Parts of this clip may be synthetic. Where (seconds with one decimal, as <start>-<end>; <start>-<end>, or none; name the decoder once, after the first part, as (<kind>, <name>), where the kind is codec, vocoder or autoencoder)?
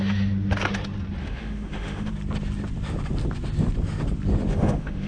1.2-2.1 (autoencoder, DAC-VAE); 4.5-5.1